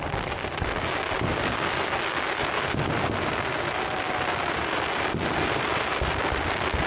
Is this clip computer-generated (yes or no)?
no